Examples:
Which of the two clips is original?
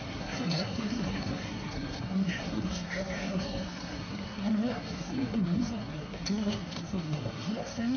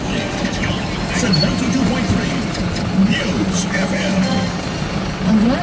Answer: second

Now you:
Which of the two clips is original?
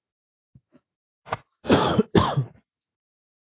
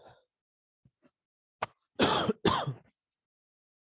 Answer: second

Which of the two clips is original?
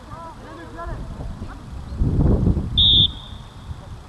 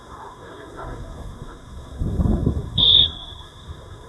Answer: first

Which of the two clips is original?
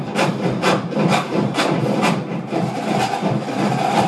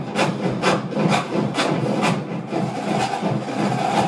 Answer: second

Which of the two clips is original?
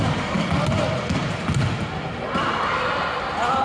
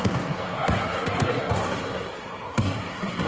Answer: first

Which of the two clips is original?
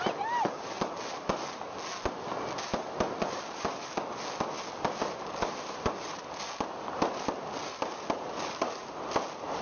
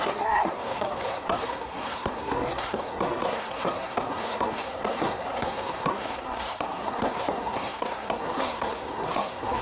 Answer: first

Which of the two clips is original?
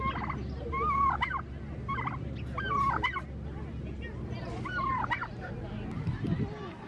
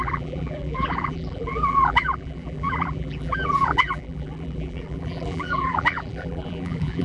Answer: first